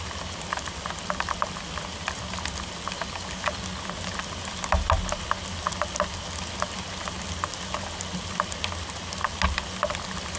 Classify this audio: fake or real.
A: real